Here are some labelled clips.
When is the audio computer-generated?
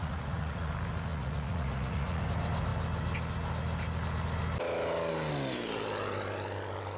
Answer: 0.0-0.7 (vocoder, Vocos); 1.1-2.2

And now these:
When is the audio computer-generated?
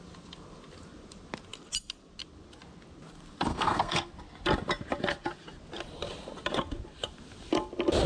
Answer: 3.5-4.1 (codec, SNAC)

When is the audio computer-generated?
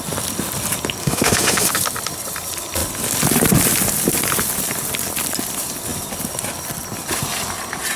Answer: 1.0-1.7 (autoencoder, DAC-VAE)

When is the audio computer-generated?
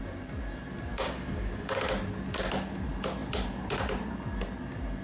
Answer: 0.9-1.8 (codec, DAC)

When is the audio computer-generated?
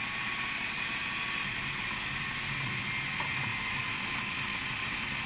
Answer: none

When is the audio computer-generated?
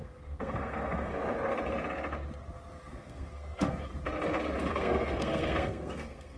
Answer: 0.0-1.1 (codec, SNAC); 2.8-3.9; 4.7-6.4